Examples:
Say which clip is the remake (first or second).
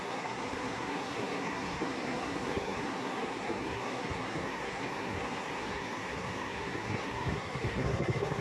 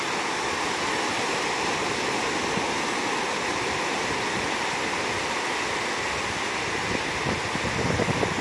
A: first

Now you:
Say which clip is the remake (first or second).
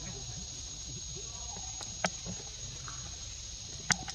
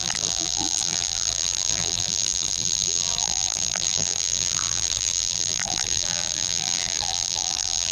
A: second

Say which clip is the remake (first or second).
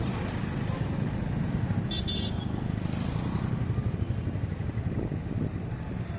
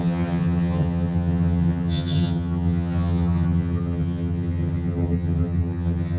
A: second